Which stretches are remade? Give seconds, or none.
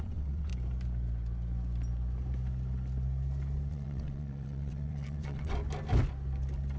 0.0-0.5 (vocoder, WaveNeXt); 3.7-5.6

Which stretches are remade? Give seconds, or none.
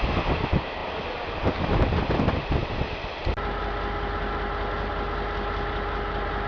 none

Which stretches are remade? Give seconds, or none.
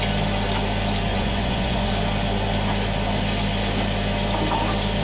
1.1-1.9 (vocoder, Vocos)